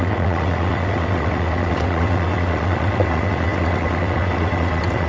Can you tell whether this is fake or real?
fake